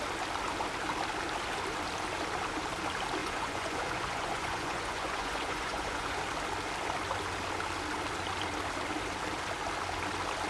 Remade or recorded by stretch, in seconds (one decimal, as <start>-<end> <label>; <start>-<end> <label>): 0.0-3.2 recorded; 3.2-6.2 remade; 6.2-10.5 recorded